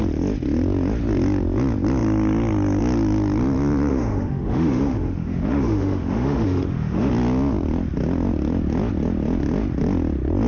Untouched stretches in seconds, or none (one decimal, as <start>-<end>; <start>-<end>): 0.0-3.9; 7.1-10.5